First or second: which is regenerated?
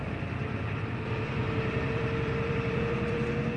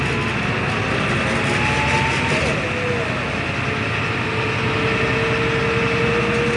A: first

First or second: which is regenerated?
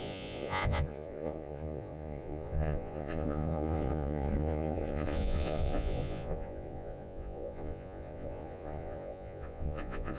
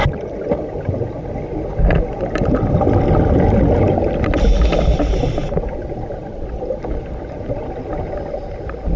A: first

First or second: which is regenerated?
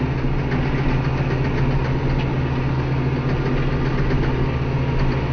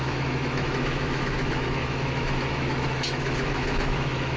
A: second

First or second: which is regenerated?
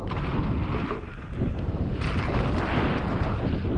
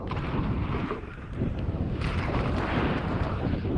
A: second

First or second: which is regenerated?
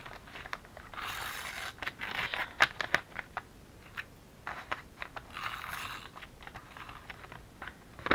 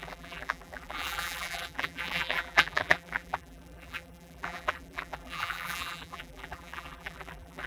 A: second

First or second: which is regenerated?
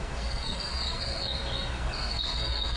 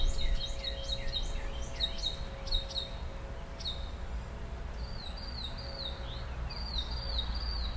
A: first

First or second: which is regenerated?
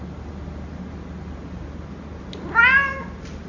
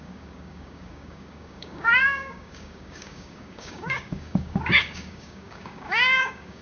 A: second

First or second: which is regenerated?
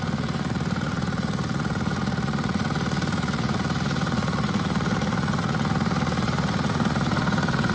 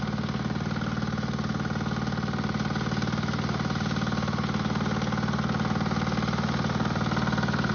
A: first